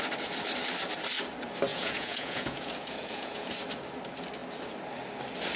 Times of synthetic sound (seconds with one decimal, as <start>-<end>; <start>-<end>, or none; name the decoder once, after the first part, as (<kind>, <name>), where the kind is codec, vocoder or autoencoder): 1.7-3.5 (vocoder, Vocos)

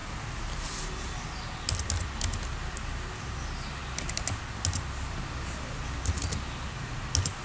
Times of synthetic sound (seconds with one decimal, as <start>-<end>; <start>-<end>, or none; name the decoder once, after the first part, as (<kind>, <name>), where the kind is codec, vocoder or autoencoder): none

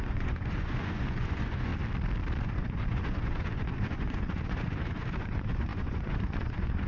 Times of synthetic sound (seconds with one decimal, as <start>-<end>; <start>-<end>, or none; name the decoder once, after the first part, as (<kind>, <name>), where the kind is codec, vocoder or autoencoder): 0.0-1.7 (vocoder, Vocos); 2.4-6.9